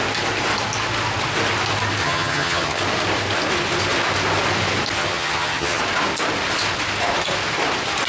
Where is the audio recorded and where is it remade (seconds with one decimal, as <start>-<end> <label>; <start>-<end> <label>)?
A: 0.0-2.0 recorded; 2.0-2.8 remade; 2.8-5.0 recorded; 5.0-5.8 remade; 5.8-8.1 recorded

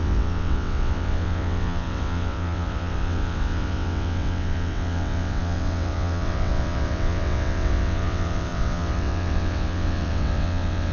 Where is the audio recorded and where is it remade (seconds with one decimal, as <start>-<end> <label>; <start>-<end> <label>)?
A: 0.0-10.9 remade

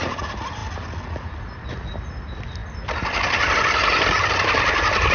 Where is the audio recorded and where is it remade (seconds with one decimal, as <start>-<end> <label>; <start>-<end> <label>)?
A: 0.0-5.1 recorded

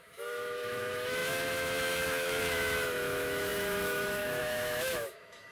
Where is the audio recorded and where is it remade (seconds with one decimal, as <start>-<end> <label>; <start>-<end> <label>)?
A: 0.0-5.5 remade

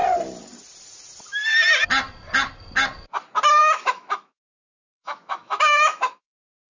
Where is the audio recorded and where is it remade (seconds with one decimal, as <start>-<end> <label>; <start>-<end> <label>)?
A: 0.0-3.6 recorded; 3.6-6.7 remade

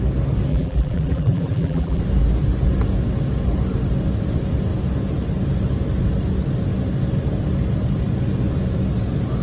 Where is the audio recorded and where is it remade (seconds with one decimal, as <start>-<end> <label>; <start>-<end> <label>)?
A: 0.0-0.5 recorded; 0.5-2.0 remade; 2.0-9.4 recorded